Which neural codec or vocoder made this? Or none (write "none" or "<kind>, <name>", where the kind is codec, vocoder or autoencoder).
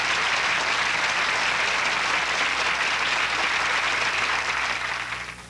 none